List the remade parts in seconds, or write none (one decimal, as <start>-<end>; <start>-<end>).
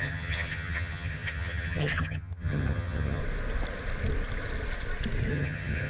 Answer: 0.0-3.2; 5.3-5.9